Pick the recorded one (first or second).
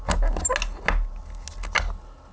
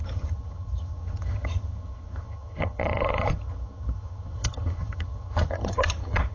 first